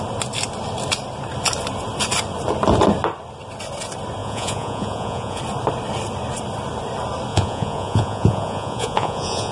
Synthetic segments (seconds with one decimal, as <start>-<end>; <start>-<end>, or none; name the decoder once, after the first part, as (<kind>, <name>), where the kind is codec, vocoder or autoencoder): 4.2-5.4 (vocoder, Vocos); 7.3-9.5